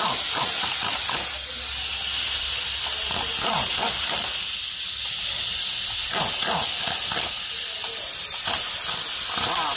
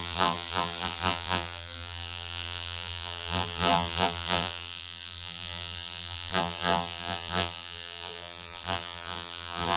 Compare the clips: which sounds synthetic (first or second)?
second